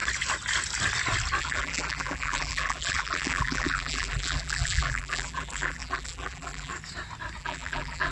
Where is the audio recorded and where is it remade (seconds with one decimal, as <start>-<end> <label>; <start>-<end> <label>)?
0.0-1.4 recorded; 1.4-6.7 remade; 6.7-7.4 recorded; 7.4-8.1 remade